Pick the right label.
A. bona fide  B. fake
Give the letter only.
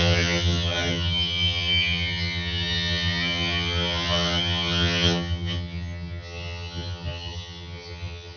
B